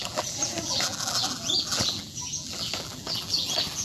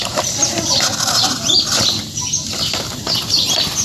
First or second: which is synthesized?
first